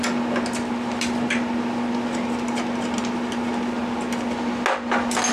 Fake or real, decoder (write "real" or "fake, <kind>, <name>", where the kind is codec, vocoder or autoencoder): real